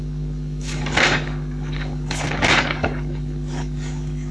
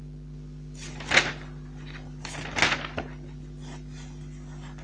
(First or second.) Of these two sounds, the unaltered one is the second